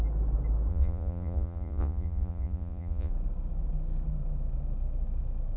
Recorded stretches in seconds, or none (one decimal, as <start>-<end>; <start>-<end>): 0.0-0.7; 3.1-5.6